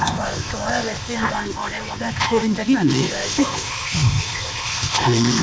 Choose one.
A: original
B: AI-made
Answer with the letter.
B